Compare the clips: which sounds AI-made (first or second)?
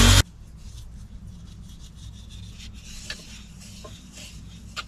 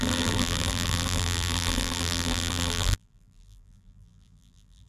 second